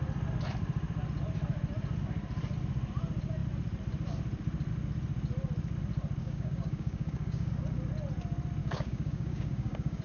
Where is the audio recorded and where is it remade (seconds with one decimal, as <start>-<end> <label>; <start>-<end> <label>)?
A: 0.0-6.2 recorded; 6.2-7.5 remade; 7.5-8.6 recorded; 8.6-10.0 remade